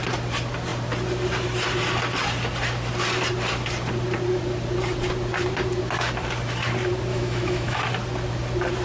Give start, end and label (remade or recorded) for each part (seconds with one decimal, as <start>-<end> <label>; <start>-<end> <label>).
0.0-7.1 recorded; 7.1-7.8 remade; 7.8-8.8 recorded